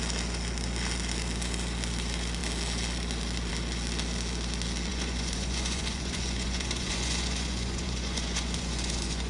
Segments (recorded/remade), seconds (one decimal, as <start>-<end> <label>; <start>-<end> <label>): 0.0-4.9 recorded; 4.9-9.3 remade